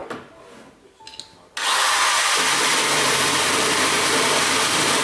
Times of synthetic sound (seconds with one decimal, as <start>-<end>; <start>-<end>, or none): 2.6-5.0